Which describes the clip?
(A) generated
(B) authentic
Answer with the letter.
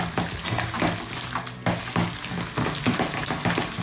B